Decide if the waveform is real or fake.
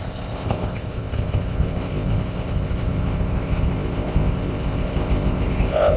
fake